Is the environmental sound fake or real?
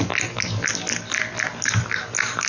real